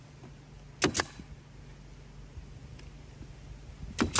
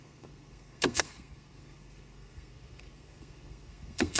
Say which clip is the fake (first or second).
second